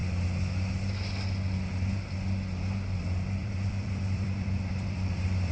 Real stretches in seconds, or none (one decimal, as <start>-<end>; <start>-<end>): 0.0-3.4